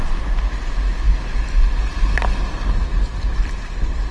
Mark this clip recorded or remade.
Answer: recorded